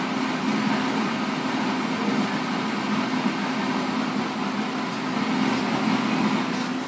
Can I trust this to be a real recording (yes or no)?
yes